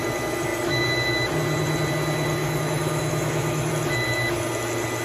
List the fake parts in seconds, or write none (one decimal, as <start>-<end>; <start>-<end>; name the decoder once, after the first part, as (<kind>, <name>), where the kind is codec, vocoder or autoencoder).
2.4-3.7 (autoencoder, DAC-VAE)